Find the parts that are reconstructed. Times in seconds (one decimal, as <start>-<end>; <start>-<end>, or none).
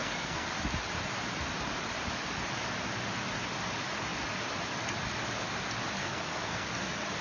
0.0-0.5; 6.0-6.7